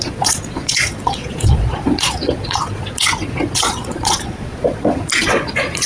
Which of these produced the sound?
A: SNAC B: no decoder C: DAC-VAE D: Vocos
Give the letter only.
D